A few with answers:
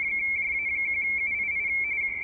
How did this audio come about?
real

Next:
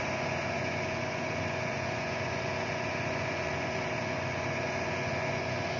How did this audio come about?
fake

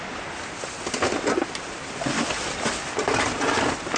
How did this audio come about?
real